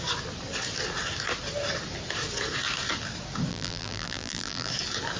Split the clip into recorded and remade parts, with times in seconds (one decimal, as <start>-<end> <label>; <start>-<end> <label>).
0.0-3.5 recorded; 3.5-4.7 remade; 4.7-5.2 recorded